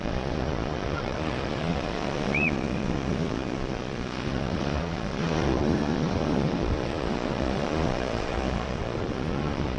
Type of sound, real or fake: fake